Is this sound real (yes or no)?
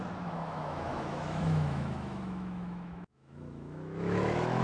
no